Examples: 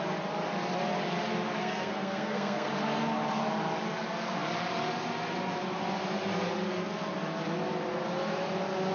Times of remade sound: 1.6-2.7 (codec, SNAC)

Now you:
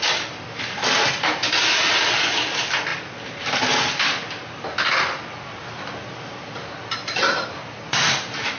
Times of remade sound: none

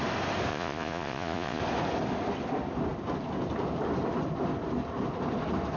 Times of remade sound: 0.5-1.6 (vocoder, Vocos)

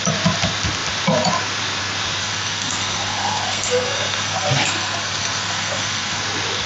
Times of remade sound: 2.2-6.2 (codec, SNAC)

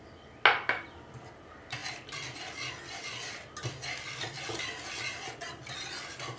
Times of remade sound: none

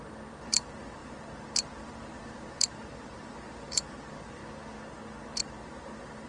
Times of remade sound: 0.0-4.4 (vocoder, BigVGAN v2); 5.4-6.3